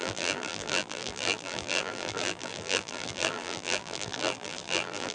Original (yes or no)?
no